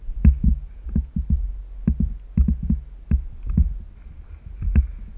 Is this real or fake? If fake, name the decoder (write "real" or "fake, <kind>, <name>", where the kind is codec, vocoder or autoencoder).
real